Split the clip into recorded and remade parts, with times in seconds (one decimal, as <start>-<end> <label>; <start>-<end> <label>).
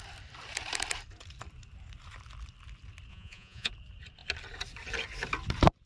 0.0-3.1 recorded; 3.1-3.7 remade; 3.7-5.9 recorded